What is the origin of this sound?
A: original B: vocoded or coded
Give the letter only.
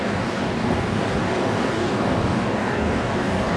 B